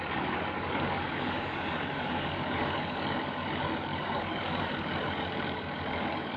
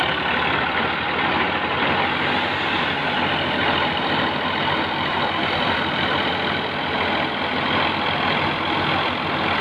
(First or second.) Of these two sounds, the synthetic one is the first